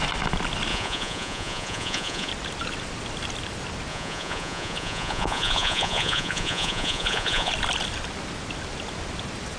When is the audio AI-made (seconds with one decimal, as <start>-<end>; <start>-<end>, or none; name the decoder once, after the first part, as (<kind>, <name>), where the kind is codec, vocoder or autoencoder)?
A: 0.7-2.3 (vocoder, Vocos); 3.9-7.5